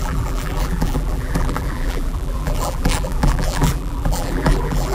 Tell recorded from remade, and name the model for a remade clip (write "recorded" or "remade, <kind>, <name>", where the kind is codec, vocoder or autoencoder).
remade, vocoder, BigVGAN v2